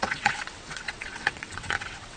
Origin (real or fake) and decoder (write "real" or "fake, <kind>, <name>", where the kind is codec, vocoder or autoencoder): fake, vocoder, WaveNeXt